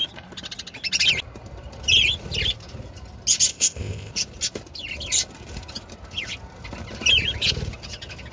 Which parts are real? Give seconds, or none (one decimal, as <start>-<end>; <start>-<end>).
0.0-3.5; 4.1-8.3